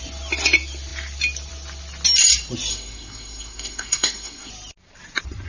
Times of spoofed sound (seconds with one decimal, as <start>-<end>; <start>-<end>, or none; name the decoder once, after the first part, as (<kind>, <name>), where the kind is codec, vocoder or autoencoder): 2.7-4.5 (codec, SNAC)